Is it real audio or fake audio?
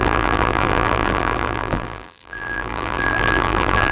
fake